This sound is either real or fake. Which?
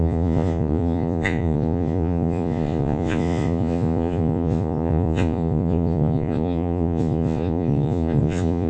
fake